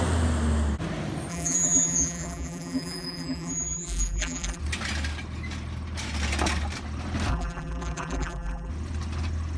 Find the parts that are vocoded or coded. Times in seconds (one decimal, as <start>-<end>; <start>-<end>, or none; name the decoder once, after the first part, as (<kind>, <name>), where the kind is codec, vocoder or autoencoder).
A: 1.3-4.6 (vocoder, BigVGAN v2); 7.3-8.7